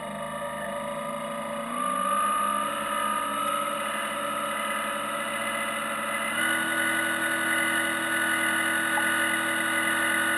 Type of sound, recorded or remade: recorded